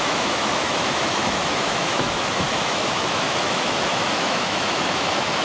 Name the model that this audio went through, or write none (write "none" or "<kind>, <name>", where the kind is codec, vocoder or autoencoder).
autoencoder, DAC-VAE